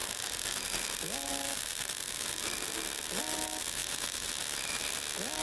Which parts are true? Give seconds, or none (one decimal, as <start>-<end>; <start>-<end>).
0.0-5.4